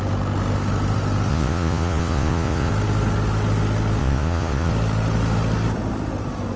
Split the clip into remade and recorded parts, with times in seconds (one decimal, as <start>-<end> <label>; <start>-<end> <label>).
0.0-1.3 recorded; 1.3-2.7 remade; 2.7-4.0 recorded; 4.0-4.7 remade; 4.7-6.6 recorded